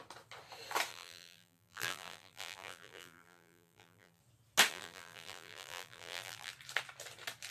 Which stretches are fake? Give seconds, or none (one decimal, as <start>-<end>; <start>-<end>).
0.9-4.2; 4.7-6.5